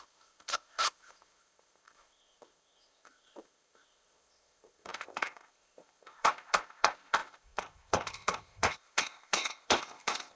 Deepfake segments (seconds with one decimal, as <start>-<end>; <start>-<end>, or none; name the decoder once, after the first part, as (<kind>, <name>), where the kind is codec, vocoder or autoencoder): 0.0-10.4 (codec, ZipCodec)